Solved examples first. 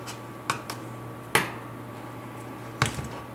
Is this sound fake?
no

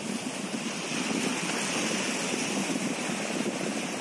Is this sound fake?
no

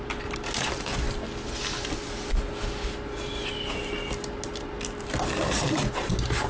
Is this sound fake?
no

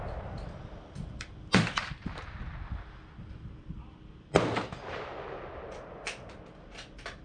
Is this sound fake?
no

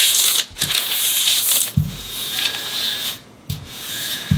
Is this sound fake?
yes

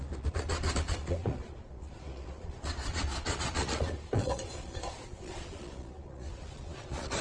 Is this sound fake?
yes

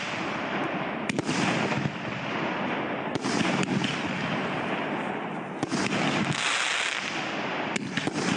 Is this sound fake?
no